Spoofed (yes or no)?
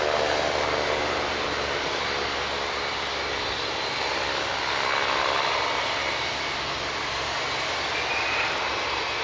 no